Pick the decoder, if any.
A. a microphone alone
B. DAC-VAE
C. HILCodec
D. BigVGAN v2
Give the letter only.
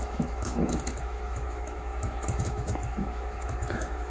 B